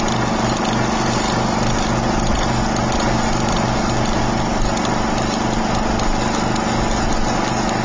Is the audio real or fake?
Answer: real